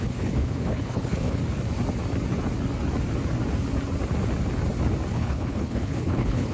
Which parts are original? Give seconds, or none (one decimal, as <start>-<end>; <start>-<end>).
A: 1.4-5.1